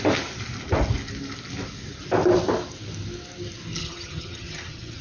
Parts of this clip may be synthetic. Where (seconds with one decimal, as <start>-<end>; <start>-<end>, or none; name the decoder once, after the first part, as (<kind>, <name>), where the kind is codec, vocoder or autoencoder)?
3.8-5.0 (vocoder, HiFi-GAN)